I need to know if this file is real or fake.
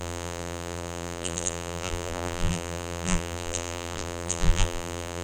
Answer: fake